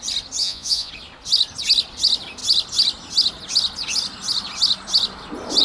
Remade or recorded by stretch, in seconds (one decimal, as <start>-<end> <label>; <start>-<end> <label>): 0.0-0.4 recorded; 0.4-0.9 remade; 0.9-5.6 recorded